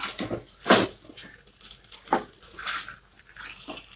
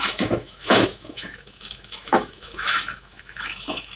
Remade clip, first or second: second